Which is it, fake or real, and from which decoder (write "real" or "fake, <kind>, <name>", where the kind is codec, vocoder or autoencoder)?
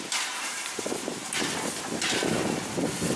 real